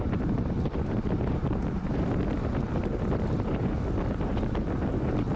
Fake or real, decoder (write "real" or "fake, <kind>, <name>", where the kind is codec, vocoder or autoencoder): real